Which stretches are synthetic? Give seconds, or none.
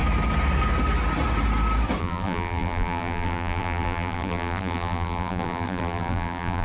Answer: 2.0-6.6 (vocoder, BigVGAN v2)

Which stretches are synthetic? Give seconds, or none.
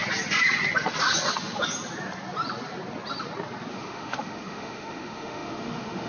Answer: 3.7-6.1 (autoencoder, DAC-VAE)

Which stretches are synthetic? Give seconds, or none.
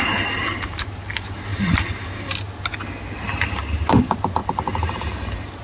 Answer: none